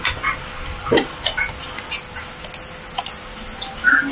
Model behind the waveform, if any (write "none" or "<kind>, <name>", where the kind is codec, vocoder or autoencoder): none